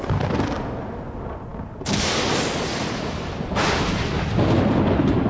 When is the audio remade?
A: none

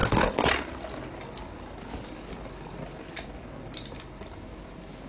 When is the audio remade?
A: none

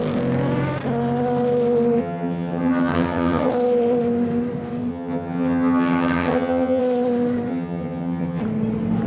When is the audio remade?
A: 2.0-3.5; 4.9-6.8; 7.5-8.4

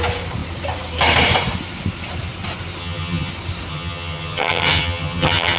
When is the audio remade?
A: 2.8-3.3; 3.7-5.6

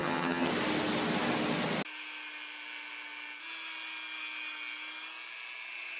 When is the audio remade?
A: 0.0-0.5